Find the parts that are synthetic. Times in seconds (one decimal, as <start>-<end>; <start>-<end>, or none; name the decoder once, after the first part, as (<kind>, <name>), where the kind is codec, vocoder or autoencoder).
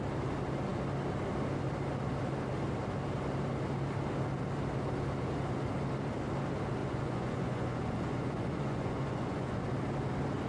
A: 6.8-9.6 (vocoder, Vocos)